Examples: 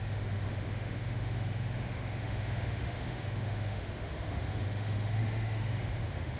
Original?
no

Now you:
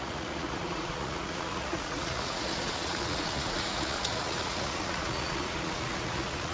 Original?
no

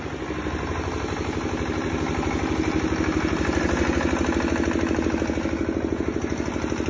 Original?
yes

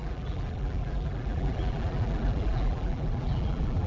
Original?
no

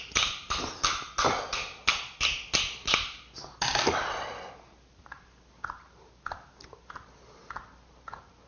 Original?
yes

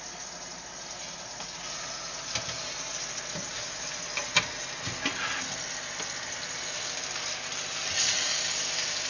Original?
yes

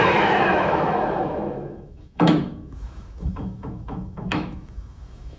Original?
no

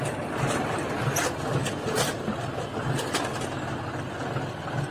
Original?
yes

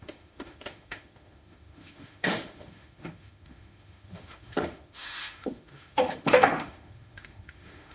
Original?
no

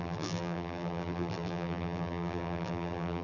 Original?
no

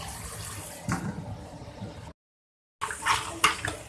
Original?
yes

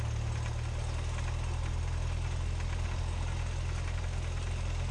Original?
yes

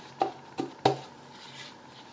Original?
yes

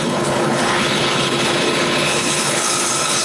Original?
no